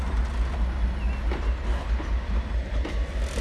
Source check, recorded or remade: recorded